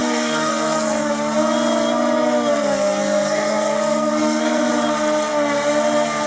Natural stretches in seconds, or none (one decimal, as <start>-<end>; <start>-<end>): 1.1-2.5; 4.7-6.3